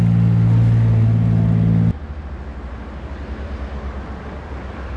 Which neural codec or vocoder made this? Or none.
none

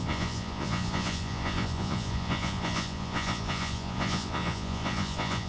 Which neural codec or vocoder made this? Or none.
vocoder, Vocos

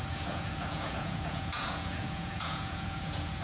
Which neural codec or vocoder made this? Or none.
vocoder, Vocos